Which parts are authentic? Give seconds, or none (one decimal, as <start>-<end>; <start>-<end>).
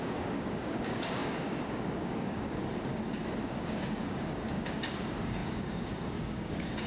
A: 2.6-3.4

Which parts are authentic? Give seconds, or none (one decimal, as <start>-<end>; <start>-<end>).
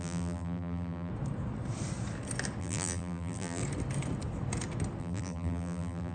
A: 1.1-2.6; 3.6-5.0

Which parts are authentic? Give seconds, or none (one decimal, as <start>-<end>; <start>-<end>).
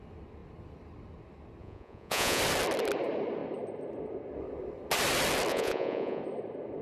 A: 0.0-1.6; 2.4-5.5; 6.2-6.8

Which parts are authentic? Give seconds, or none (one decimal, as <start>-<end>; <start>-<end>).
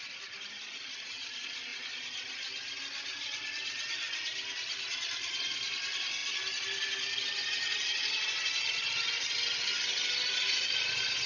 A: 0.0-11.3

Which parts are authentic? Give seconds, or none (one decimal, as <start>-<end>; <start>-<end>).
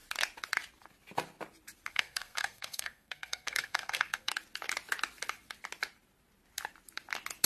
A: 0.0-1.9; 4.3-7.5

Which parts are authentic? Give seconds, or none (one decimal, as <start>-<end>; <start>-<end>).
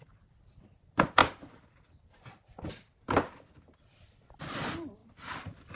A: 0.0-5.8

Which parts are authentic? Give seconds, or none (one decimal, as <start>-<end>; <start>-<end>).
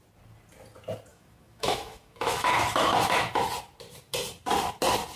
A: 0.0-1.1; 3.4-5.2